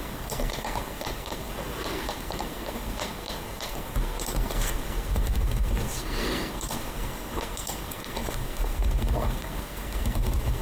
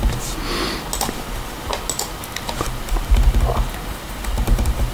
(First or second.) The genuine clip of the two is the second